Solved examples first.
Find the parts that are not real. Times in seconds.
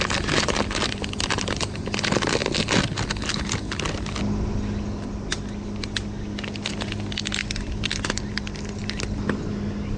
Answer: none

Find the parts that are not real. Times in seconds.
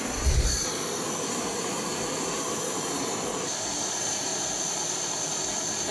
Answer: 0.0-3.3; 3.8-4.3